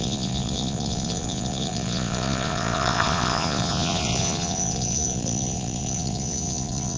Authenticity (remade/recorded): remade